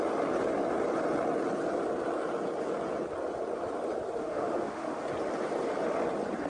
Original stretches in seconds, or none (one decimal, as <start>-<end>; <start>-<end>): 0.0-4.2; 5.0-6.5